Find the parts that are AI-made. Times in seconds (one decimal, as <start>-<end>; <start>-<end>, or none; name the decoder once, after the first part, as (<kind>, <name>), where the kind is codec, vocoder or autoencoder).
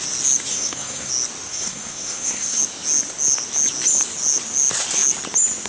0.5-1.1 (codec, SNAC); 1.5-2.6